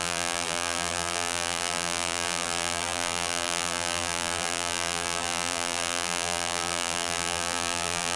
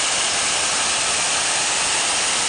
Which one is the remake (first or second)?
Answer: first